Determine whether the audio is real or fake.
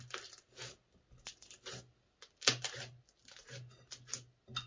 real